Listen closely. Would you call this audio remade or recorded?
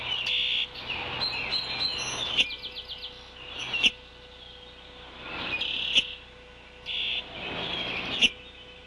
recorded